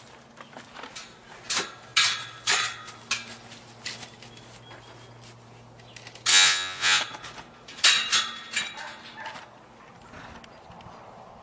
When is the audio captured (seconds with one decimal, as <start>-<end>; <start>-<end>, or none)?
0.0-6.3; 7.0-11.4